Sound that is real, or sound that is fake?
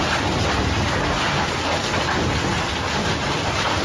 real